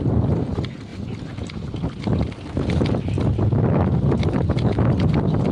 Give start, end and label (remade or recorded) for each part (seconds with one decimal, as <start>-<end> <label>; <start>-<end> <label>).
0.0-5.5 recorded